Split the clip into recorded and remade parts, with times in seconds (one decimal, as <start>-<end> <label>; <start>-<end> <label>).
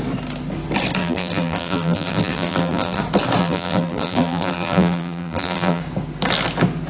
0.0-1.0 recorded; 1.0-3.0 remade; 3.0-3.4 recorded; 3.4-5.8 remade; 5.8-6.9 recorded